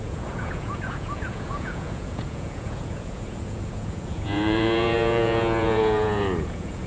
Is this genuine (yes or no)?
no